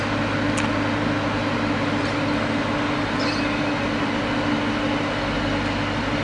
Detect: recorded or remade recorded